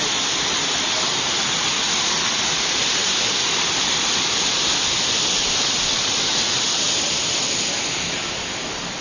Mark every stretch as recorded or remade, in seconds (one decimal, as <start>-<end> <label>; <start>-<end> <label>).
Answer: 0.0-9.0 recorded